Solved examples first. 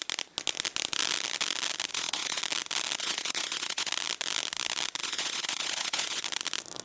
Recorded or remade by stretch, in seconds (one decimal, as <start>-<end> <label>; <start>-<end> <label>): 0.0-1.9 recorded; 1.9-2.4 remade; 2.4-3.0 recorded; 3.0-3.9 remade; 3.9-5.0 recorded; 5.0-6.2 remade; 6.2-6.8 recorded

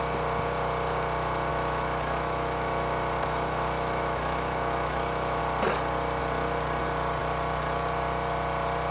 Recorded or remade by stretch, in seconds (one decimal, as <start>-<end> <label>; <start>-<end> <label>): 0.0-1.5 recorded; 1.5-5.4 remade; 5.4-8.9 recorded

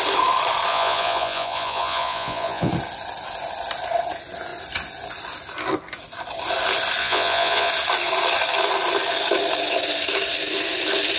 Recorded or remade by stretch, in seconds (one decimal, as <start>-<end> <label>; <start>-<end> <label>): 0.0-0.7 recorded; 0.7-2.7 remade; 2.7-7.0 recorded; 7.0-7.7 remade; 7.7-11.2 recorded

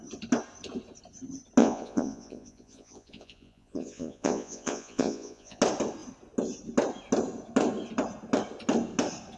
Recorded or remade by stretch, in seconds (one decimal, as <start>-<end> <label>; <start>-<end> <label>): 0.0-1.6 recorded; 1.6-5.6 remade; 5.6-9.4 recorded

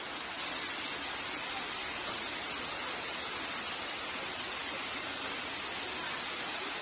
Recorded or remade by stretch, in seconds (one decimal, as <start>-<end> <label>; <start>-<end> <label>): 0.0-1.8 recorded; 1.8-2.5 remade; 2.5-6.8 recorded

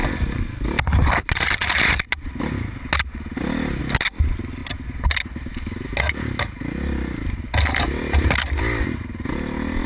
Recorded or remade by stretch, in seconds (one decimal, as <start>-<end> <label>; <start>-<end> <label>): 0.0-9.9 recorded

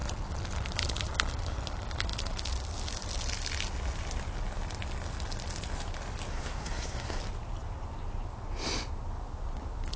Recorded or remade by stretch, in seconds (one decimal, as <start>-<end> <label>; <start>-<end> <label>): 0.0-6.3 recorded; 6.3-7.2 remade; 7.2-10.0 recorded